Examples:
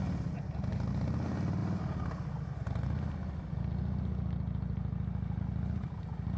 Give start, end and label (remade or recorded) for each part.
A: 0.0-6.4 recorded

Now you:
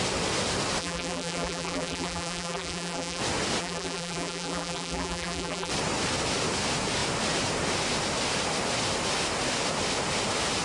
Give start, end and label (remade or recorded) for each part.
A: 0.0-0.8 recorded; 0.8-3.2 remade; 3.2-3.6 recorded; 3.6-5.7 remade; 5.7-10.6 recorded

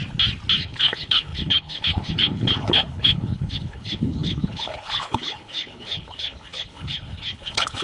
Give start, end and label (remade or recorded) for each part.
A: 0.0-0.6 recorded; 0.6-7.8 remade

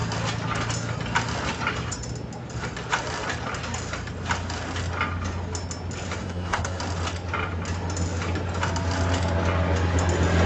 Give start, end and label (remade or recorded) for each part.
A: 0.0-6.2 recorded; 6.2-6.8 remade; 6.8-10.5 recorded

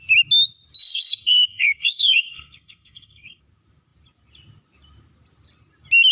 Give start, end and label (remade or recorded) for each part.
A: 0.0-0.8 recorded; 0.8-3.4 remade; 3.4-6.1 recorded

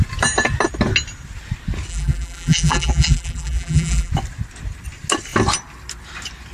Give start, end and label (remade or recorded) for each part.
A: 0.0-1.9 recorded; 1.9-4.1 remade; 4.1-6.5 recorded

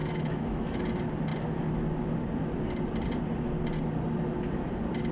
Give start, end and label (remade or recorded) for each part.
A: 0.0-0.8 remade; 0.8-5.1 recorded

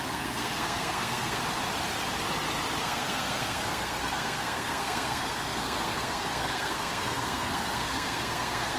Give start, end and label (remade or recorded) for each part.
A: 0.0-1.4 remade; 1.4-2.8 recorded; 2.8-8.8 remade